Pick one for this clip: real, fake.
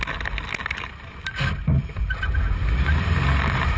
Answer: real